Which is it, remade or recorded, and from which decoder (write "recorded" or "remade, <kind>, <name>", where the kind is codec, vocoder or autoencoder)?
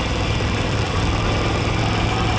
recorded